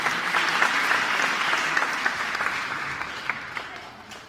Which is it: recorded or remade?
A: recorded